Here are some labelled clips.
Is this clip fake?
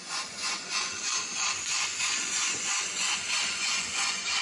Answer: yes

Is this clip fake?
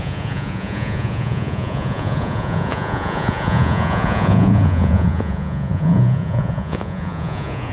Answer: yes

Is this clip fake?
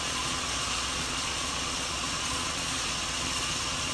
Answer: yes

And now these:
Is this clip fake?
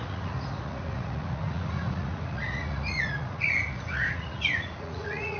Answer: yes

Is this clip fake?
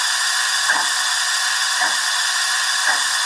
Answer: no